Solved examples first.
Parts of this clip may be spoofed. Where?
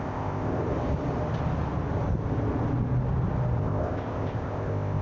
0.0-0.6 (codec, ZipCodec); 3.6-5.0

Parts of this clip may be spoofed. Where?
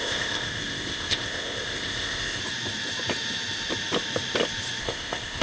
0.0-2.4 (codec, ZipCodec); 4.8-5.4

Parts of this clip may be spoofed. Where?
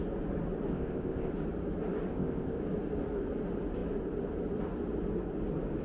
0.7-1.3 (codec, ZipCodec); 2.1-2.6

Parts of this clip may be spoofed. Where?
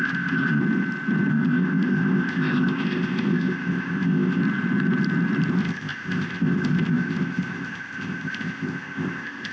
0.0-0.6 (codec, ZipCodec); 1.3-4.4; 5.5-9.5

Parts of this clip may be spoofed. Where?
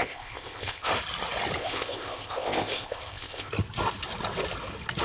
0.0-0.9 (codec, ZipCodec); 1.6-3.5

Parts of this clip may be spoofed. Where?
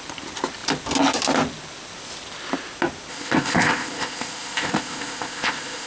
3.1-5.9 (codec, ZipCodec)